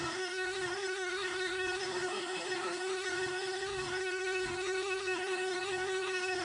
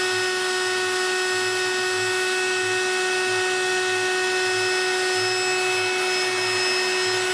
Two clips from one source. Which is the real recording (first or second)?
second